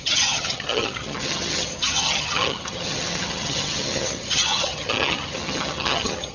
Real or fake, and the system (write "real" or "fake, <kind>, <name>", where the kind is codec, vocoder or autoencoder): fake, vocoder, HiFi-GAN